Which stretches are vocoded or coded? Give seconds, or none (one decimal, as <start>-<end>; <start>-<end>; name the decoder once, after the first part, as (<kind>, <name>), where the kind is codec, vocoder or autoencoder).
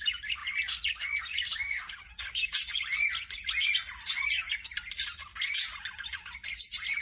0.0-0.4 (vocoder, BigVGAN v2); 1.2-2.9; 4.5-5.3